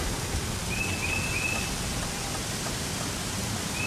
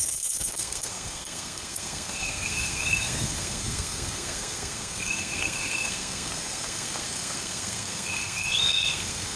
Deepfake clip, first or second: second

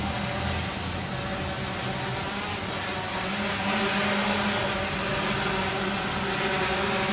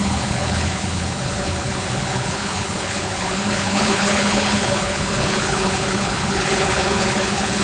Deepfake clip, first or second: second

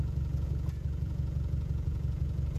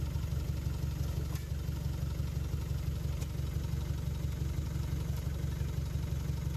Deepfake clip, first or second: first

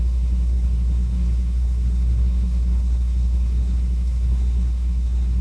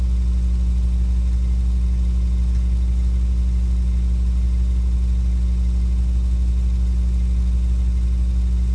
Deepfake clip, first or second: first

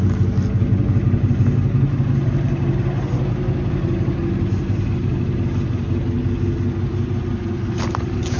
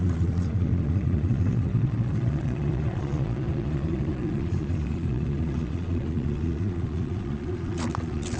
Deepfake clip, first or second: second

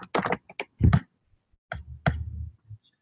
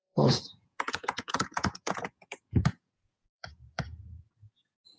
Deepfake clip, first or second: second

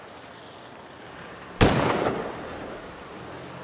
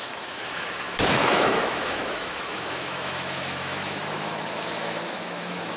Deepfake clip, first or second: second